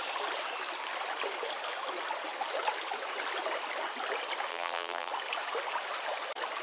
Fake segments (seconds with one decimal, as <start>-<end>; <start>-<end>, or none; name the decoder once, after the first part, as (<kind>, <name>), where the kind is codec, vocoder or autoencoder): 4.5-5.1 (vocoder, BigVGAN v2)